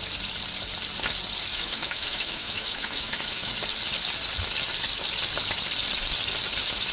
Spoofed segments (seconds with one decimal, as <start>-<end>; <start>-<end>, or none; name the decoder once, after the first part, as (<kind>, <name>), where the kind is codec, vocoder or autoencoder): 1.5-3.5 (autoencoder, DAC-VAE)